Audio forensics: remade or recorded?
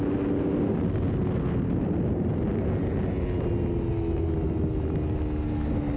recorded